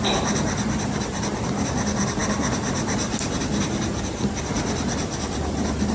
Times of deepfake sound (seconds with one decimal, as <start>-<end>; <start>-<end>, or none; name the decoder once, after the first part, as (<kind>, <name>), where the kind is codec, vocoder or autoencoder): none